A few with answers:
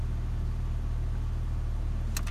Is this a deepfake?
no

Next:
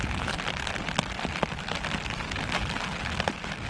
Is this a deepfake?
no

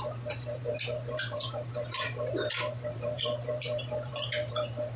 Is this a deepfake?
yes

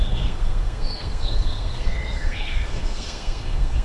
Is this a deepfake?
yes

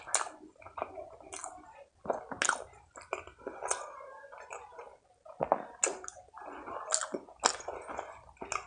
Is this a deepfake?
no